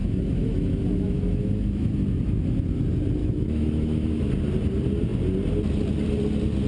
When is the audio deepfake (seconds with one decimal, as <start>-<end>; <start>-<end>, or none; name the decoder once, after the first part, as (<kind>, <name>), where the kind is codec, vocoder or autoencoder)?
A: 0.0-2.0 (autoencoder, DAC-VAE); 3.2-4.3